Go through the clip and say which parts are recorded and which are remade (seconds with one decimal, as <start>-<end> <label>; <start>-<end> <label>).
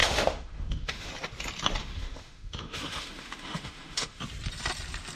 0.0-1.1 remade; 1.1-1.8 recorded; 1.8-4.2 remade; 4.2-5.2 recorded